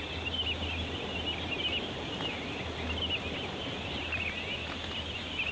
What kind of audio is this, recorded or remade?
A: recorded